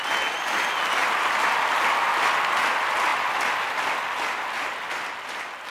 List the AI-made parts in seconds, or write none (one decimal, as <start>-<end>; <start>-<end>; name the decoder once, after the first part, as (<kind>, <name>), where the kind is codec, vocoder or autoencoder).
none